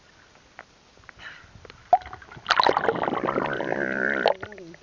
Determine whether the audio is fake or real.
real